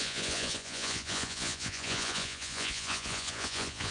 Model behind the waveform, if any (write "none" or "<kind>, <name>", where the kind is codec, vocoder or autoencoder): vocoder, Vocos